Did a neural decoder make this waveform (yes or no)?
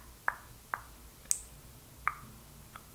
no